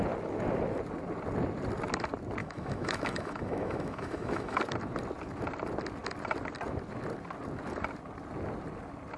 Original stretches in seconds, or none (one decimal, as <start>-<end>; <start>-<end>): 0.0-2.4; 4.6-9.2